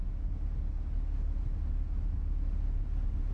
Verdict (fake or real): real